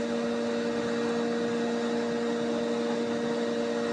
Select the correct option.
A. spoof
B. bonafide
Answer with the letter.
B